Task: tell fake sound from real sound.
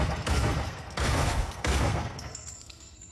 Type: fake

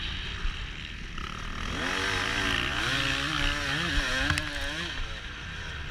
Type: real